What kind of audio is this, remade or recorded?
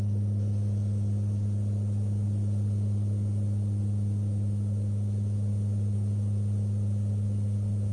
recorded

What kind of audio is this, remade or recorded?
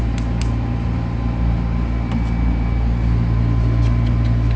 recorded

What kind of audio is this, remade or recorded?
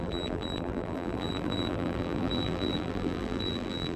remade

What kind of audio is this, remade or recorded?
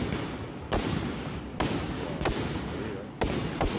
recorded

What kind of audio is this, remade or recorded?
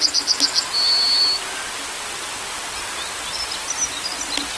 recorded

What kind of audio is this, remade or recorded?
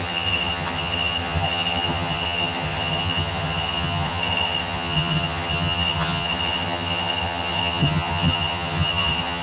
remade